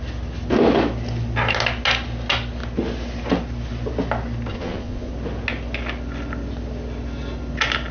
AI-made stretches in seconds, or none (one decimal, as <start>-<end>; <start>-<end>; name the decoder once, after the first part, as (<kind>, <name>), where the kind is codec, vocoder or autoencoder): 4.5-5.1 (vocoder, Vocos)